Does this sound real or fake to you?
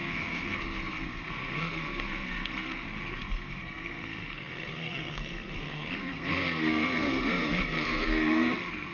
fake